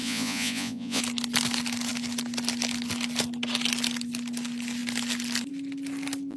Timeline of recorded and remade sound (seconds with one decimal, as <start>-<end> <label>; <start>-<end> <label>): 0.0-1.0 remade; 1.0-6.4 recorded